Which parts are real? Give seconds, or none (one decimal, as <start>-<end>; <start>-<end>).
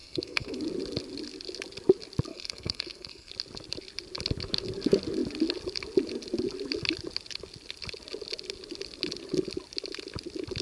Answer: 0.6-2.3; 3.3-10.6